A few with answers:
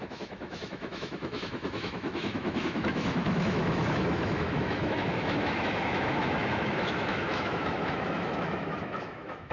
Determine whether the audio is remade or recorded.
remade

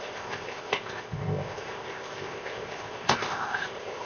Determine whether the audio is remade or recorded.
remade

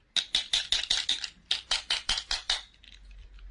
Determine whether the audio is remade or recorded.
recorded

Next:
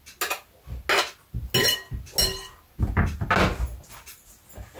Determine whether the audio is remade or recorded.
recorded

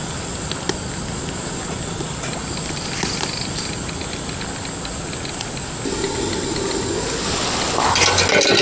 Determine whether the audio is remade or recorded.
recorded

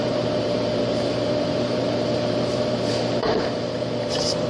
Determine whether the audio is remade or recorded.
remade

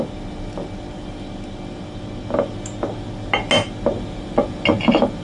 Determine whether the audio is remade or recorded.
recorded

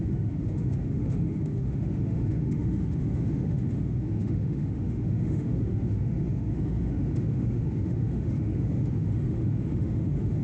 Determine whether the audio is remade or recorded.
remade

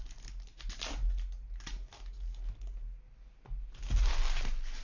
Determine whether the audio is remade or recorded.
recorded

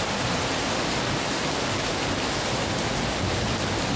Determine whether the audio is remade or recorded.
recorded